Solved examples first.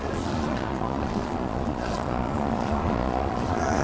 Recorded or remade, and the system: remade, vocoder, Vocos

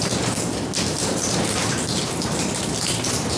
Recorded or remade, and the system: remade, vocoder, BigVGAN v2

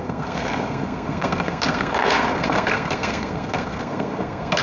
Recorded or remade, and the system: remade, codec, SNAC